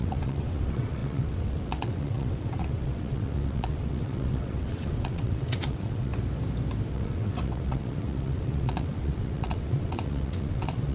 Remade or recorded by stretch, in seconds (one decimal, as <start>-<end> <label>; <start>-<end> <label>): 0.0-6.1 remade; 6.1-6.9 recorded; 6.9-10.9 remade